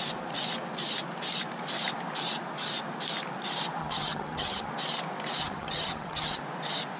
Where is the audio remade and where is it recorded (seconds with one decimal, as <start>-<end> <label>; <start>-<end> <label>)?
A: 0.0-3.8 recorded; 3.8-4.7 remade; 4.7-5.4 recorded; 5.4-6.4 remade; 6.4-7.0 recorded